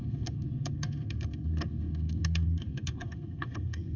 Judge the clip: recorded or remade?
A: remade